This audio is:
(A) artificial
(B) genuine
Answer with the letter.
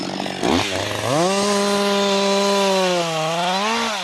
B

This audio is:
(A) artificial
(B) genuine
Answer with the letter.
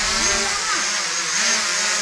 B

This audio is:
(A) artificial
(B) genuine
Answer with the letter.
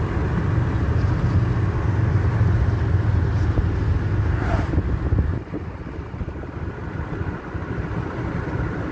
B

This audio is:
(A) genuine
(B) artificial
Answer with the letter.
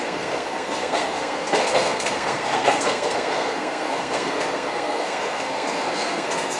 B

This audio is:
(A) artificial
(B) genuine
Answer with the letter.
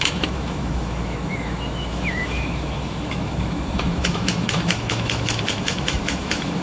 A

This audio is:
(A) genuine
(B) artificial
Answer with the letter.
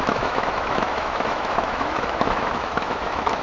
B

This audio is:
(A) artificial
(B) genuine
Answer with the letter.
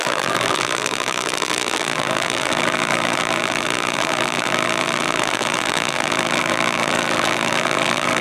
A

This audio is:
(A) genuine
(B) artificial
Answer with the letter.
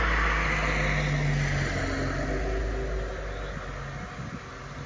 A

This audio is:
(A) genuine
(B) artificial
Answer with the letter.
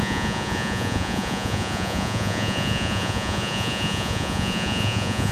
B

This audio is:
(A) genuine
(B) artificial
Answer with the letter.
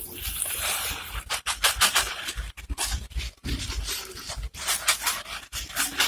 A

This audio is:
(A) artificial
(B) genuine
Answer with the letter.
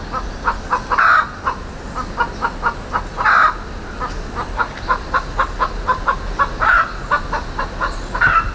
B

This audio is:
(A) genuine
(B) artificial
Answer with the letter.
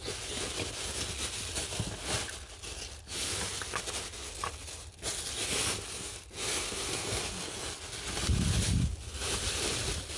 A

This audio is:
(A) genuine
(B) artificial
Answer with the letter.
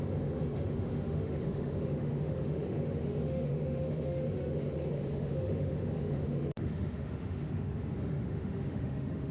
B